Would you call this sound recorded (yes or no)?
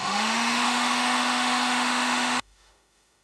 no